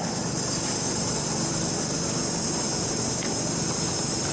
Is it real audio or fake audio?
real